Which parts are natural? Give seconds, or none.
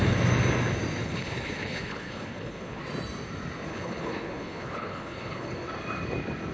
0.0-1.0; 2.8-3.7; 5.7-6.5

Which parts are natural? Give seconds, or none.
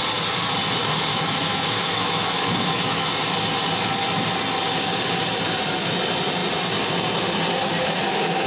0.0-1.1; 3.1-7.8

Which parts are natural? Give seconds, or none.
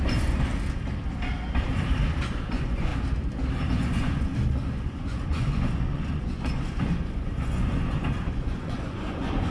0.5-2.2; 2.9-3.7; 4.3-4.8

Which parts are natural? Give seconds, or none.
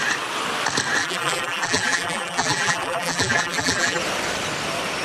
0.0-1.0; 4.0-5.0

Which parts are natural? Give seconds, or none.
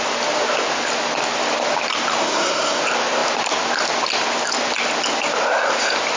0.0-2.2; 2.8-6.2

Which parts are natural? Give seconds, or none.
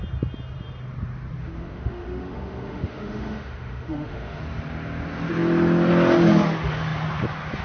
0.0-1.4; 4.4-7.6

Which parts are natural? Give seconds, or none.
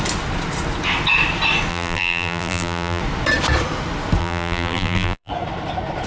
0.0-1.7; 3.0-4.2; 5.3-6.1